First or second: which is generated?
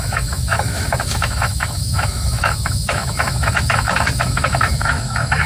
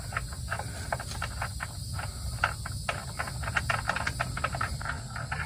first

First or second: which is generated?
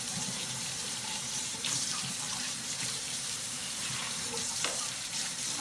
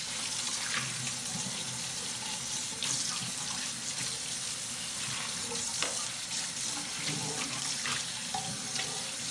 first